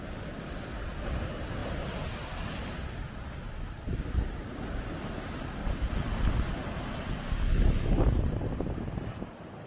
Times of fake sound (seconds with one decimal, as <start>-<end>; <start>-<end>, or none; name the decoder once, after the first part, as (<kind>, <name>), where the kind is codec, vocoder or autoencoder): none